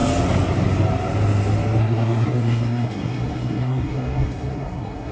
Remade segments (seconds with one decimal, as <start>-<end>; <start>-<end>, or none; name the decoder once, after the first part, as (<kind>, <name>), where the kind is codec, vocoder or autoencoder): 1.8-5.1 (codec, SNAC)